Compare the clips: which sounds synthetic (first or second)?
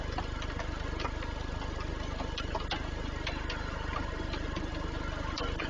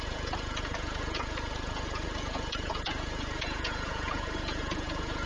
second